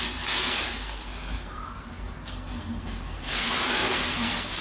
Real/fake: fake